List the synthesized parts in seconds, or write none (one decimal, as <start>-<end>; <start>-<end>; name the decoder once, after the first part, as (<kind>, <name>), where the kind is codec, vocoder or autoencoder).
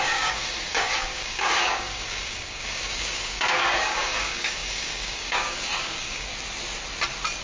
0.0-6.3 (codec, DAC)